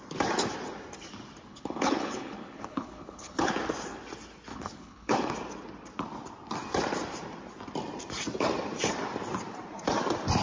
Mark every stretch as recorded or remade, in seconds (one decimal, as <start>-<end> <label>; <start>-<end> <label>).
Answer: 0.0-1.5 recorded; 1.5-3.5 remade; 3.5-4.5 recorded; 4.5-5.3 remade; 5.3-10.4 recorded